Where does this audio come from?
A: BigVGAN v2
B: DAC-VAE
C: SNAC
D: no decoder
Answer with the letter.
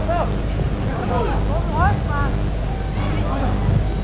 D